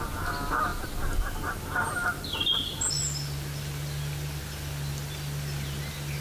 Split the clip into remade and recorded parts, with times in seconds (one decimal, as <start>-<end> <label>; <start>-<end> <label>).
0.0-6.2 recorded